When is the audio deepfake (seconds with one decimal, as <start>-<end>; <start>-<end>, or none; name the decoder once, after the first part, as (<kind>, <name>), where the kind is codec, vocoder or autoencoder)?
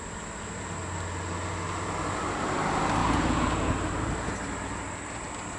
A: 3.0-3.7 (vocoder, Vocos)